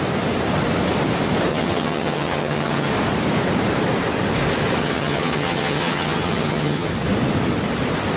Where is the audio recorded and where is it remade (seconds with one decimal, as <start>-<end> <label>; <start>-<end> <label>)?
0.0-1.5 recorded; 1.5-2.9 remade; 2.9-4.8 recorded; 4.8-6.9 remade; 6.9-8.2 recorded